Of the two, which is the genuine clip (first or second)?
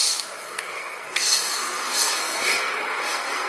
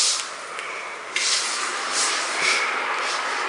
second